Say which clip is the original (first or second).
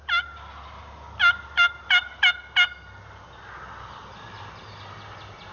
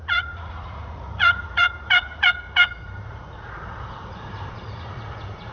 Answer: first